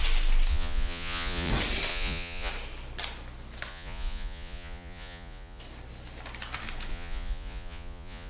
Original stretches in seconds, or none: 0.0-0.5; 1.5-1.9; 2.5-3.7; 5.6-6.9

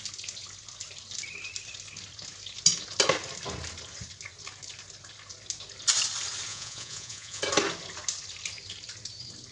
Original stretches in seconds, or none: 0.0-6.5; 7.4-9.5

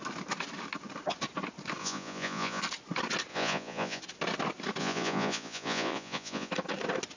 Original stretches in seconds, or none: 0.0-1.8; 2.6-3.3; 4.0-4.8; 6.5-7.2